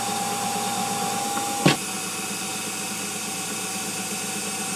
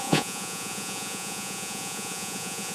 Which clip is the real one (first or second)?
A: first